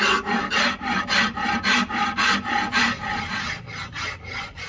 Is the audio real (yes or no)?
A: no